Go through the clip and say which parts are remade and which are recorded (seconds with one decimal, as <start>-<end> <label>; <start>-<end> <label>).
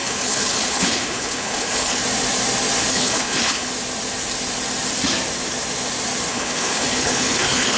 0.0-2.0 remade; 2.0-2.9 recorded; 2.9-3.7 remade; 3.7-6.3 recorded; 6.3-7.8 remade